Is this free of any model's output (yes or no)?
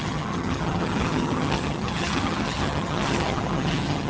no